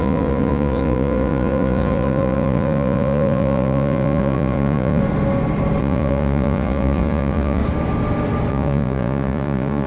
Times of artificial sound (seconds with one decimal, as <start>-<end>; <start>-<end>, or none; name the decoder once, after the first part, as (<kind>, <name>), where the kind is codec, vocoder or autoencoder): 0.0-5.0 (vocoder, Vocos); 5.8-7.6; 8.5-9.9